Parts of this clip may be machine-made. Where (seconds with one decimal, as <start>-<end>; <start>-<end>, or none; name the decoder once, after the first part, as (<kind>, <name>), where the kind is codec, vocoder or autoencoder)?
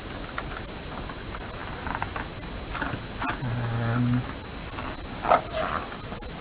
none